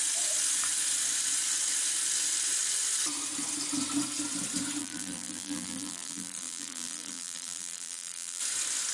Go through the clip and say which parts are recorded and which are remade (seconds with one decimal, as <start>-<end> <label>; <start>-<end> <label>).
0.0-4.8 recorded; 4.8-8.4 remade; 8.4-8.9 recorded